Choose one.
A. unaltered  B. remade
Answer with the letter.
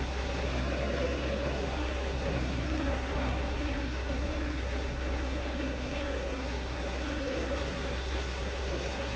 B